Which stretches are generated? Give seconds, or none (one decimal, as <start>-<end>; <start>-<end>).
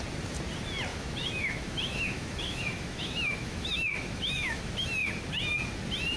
0.9-4.6